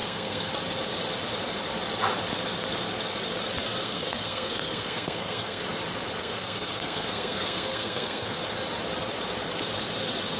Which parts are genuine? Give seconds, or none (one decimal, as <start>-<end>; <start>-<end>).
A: 0.5-3.8; 5.6-6.2; 8.4-10.4